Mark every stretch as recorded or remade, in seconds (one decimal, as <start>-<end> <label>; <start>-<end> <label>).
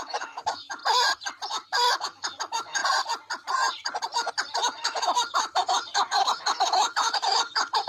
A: 0.0-0.8 remade; 0.8-1.5 recorded; 1.5-2.8 remade; 2.8-4.6 recorded; 4.6-7.9 remade